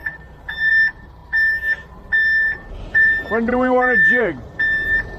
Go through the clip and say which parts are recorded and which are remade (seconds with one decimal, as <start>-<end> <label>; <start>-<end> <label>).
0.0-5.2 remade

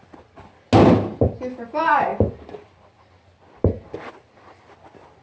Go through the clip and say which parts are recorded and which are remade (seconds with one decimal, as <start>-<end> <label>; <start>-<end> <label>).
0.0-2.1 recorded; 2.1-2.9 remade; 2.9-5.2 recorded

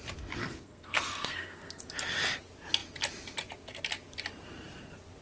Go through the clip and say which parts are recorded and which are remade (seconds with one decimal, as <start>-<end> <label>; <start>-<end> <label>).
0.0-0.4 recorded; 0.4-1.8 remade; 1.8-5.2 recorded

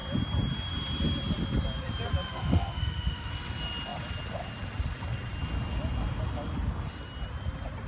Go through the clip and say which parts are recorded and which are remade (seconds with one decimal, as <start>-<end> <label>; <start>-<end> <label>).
0.0-2.3 recorded; 2.3-3.3 remade; 3.3-7.9 recorded

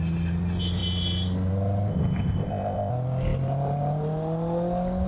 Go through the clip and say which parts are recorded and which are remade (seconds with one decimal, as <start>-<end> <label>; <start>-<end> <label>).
0.0-1.9 recorded; 1.9-2.9 remade; 2.9-5.1 recorded

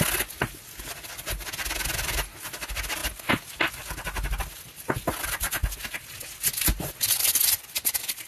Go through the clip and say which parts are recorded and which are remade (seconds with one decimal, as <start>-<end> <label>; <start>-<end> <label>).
0.0-8.3 recorded

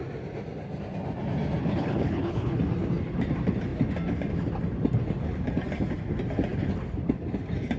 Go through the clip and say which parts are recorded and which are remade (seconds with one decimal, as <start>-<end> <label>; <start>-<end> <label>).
0.0-1.6 recorded; 1.6-2.6 remade; 2.6-7.8 recorded

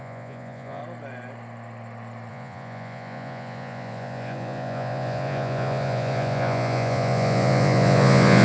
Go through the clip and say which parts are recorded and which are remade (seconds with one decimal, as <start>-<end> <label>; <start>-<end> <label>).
0.0-0.8 remade; 0.8-2.3 recorded; 2.3-8.4 remade